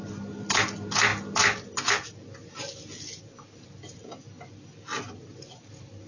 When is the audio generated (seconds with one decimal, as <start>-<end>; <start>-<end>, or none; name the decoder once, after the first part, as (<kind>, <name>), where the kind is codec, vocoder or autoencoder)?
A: none